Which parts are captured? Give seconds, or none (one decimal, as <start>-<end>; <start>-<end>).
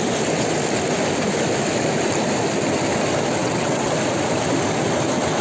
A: 0.0-3.4; 3.9-5.4